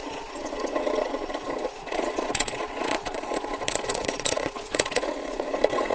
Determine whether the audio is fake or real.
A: fake